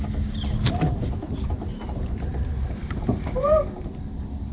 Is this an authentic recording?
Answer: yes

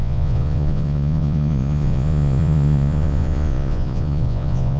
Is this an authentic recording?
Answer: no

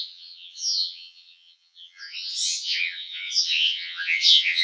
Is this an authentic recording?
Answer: no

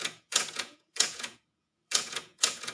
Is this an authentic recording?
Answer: no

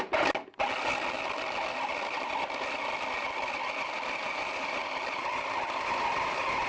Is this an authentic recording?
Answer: yes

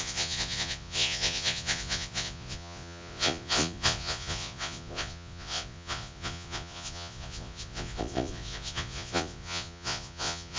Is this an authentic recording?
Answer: no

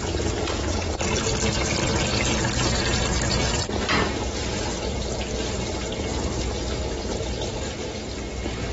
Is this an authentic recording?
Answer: yes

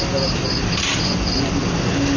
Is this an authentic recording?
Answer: yes